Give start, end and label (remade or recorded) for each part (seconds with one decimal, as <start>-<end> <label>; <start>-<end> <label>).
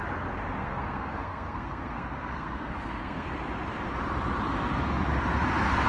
0.0-0.6 recorded; 0.6-3.3 remade; 3.3-5.9 recorded